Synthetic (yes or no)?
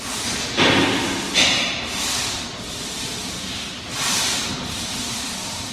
yes